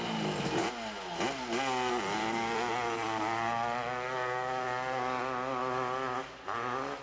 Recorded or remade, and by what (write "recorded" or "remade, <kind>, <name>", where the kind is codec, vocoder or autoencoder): recorded